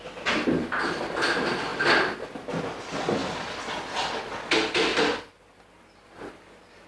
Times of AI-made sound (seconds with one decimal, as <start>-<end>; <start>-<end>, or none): none